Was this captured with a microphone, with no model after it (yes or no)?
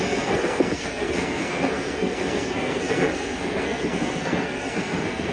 no